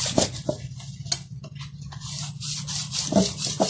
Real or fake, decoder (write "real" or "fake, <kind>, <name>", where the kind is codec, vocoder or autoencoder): real